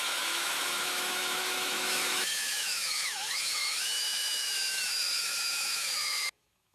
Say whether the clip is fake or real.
fake